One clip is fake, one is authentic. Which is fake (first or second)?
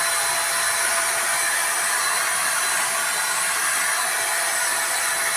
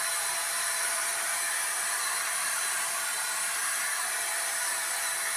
second